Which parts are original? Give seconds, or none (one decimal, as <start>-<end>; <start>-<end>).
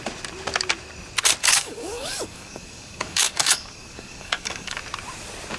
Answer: 0.0-1.4; 4.8-5.6